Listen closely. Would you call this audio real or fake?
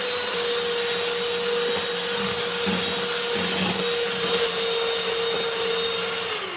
real